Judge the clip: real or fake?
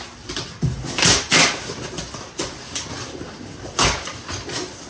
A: real